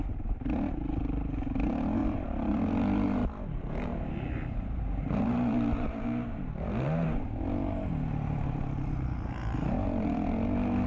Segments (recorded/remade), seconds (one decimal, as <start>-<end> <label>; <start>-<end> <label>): 0.0-10.9 remade